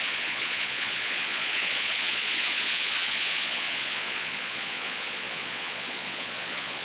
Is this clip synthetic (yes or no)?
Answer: yes